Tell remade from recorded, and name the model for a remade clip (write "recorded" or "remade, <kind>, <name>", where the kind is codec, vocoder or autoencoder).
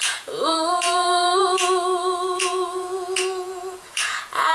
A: remade, vocoder, Vocos